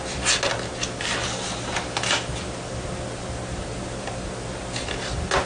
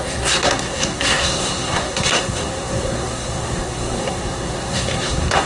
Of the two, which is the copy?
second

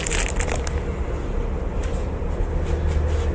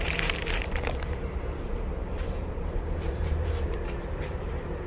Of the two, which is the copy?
second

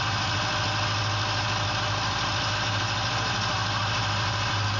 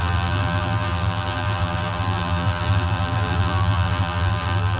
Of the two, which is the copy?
second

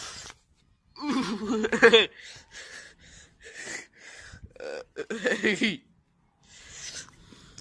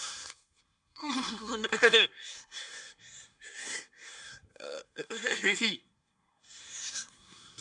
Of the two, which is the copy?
second